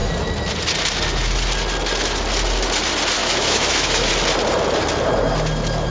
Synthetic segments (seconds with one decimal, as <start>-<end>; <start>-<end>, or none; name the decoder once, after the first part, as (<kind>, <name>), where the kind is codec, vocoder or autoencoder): 3.2-4.1 (autoencoder, DAC-VAE)